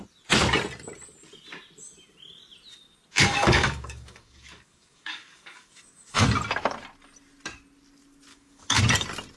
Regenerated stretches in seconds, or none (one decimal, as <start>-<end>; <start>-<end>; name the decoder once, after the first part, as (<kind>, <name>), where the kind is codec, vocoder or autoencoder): 3.2-6.2 (codec, DAC); 8.3-8.8

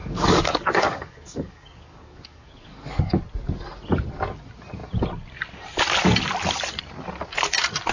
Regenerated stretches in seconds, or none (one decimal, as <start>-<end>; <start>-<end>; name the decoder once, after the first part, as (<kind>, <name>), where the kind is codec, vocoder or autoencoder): 0.0-3.2 (codec, DAC)

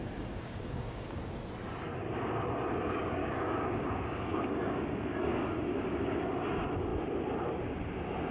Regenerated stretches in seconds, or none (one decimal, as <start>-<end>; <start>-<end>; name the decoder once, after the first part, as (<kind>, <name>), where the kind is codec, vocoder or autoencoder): 0.0-1.2 (codec, DAC); 3.2-5.2

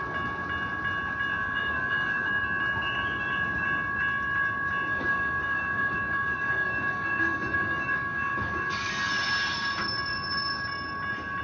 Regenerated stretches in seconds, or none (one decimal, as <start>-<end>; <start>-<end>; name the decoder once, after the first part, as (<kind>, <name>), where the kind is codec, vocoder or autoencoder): 1.4-2.3 (codec, DAC); 4.9-9.1

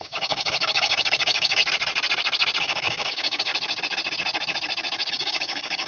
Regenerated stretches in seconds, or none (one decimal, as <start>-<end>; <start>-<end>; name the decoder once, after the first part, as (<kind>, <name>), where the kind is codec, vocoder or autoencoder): 0.0-1.6 (codec, DAC); 2.6-3.5; 5.1-5.9